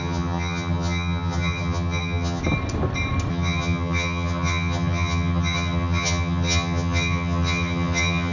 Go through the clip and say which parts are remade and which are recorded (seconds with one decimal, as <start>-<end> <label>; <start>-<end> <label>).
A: 0.0-2.4 remade; 2.4-3.3 recorded; 3.3-8.3 remade